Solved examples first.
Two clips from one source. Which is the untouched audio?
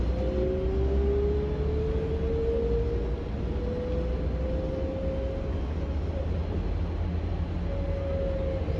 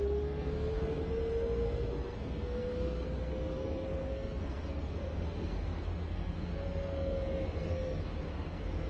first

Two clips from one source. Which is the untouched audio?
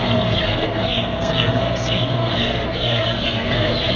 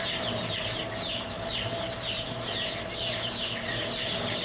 second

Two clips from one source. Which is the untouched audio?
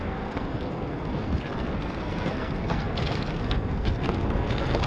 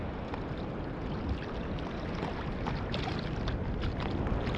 second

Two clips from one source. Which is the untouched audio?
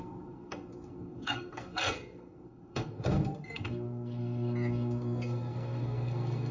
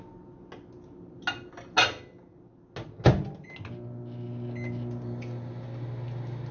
second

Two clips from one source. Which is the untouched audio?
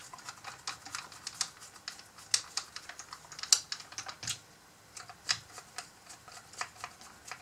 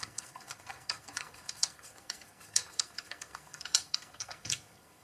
first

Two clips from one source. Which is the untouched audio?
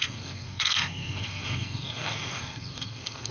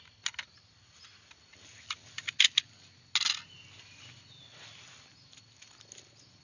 second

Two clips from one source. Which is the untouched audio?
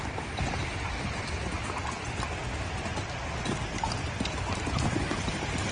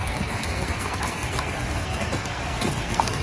first